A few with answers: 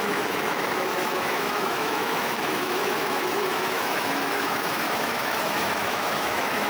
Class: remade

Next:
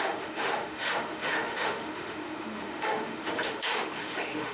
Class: remade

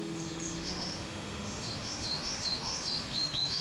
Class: remade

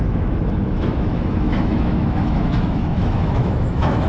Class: remade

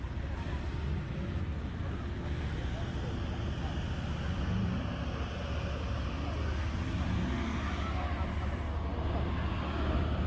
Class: recorded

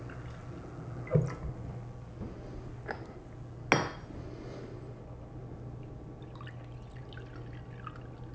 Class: recorded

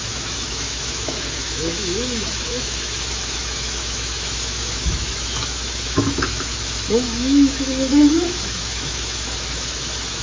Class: remade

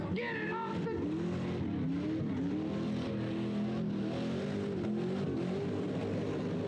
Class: recorded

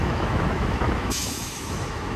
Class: remade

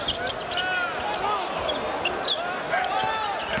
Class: recorded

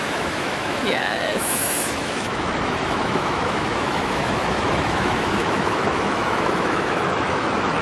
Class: remade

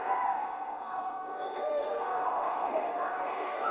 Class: remade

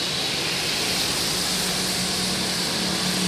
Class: recorded